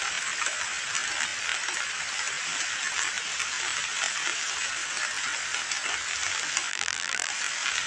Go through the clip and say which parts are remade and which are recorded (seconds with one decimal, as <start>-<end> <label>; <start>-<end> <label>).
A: 0.0-6.7 recorded; 6.7-7.3 remade; 7.3-7.9 recorded